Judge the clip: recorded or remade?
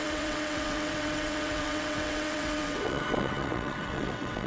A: remade